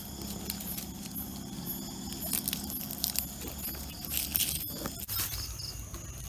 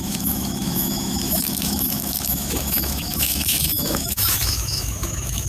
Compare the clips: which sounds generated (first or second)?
second